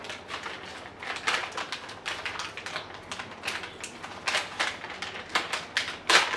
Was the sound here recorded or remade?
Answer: recorded